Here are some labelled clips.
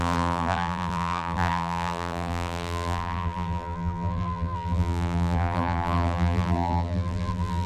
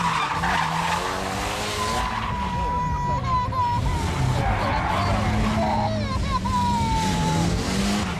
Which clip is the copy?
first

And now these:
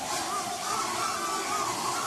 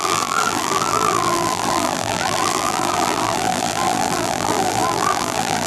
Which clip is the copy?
second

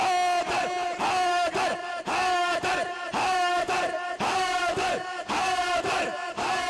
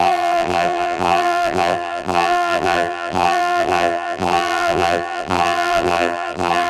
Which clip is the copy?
second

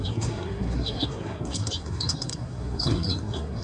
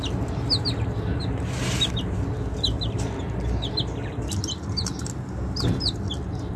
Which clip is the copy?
first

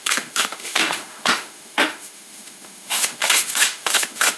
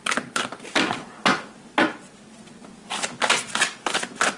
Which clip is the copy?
first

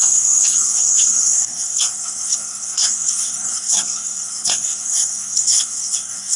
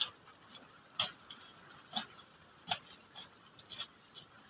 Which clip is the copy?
first